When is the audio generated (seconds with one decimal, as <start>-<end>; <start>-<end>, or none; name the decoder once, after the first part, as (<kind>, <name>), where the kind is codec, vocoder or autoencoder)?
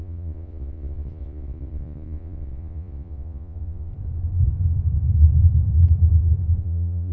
0.0-3.9 (vocoder, Vocos); 6.6-7.1